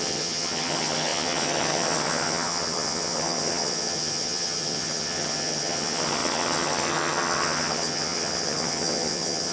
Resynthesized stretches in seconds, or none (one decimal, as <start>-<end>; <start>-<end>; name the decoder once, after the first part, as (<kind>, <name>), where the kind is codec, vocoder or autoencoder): 0.0-9.5 (vocoder, HiFi-GAN)